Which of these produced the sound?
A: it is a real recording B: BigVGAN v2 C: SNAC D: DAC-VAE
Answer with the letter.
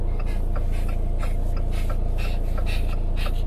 A